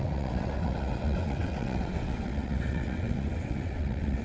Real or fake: fake